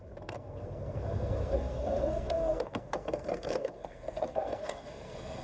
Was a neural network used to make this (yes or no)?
yes